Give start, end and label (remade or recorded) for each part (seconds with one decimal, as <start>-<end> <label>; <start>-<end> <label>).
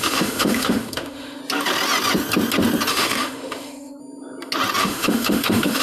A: 0.0-1.4 remade; 1.4-2.9 recorded; 2.9-4.0 remade; 4.0-4.8 recorded; 4.8-5.8 remade